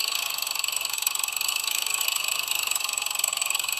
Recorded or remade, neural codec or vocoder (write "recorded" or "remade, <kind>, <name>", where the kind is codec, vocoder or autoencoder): remade, codec, SNAC